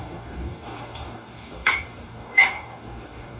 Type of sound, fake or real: fake